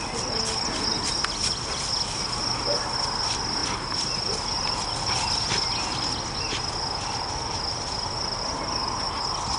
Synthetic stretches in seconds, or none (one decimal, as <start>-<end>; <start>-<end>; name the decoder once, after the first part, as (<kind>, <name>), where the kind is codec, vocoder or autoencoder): none